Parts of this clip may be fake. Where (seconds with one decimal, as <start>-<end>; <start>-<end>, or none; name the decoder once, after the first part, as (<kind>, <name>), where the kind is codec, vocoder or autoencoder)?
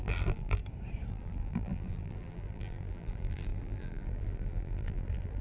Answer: 0.0-0.6 (vocoder, BigVGAN v2); 1.1-5.4